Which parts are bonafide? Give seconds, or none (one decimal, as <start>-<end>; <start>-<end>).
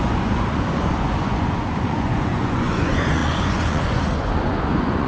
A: none